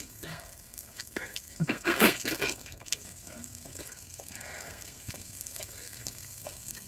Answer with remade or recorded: remade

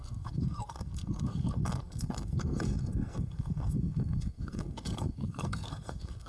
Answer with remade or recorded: remade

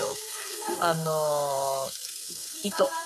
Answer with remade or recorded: remade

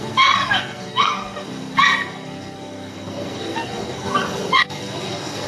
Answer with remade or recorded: remade